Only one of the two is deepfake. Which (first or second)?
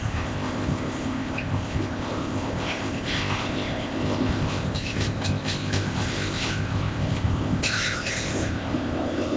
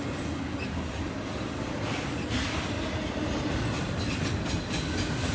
first